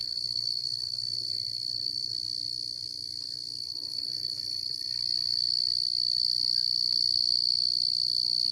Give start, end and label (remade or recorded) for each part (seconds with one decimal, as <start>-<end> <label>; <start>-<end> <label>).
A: 0.0-2.1 remade; 2.1-3.6 recorded; 3.6-4.9 remade; 4.9-8.5 recorded